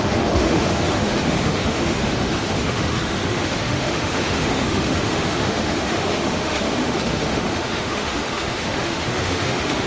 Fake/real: fake